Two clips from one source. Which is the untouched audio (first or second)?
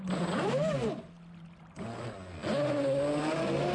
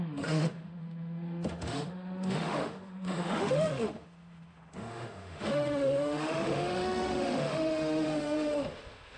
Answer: first